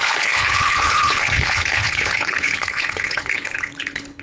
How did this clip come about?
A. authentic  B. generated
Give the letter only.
B